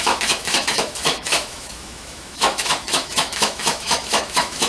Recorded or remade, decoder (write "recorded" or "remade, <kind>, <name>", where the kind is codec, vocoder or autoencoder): remade, autoencoder, DAC-VAE